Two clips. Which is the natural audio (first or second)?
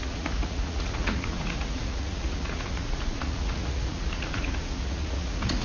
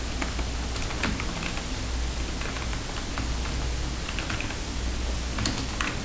second